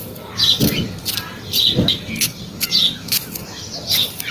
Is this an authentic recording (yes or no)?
yes